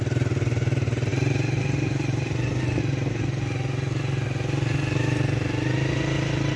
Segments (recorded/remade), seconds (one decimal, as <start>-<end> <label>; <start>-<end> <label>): 0.0-1.1 recorded; 1.1-1.6 remade; 1.6-6.6 recorded